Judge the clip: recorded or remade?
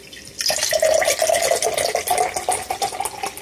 recorded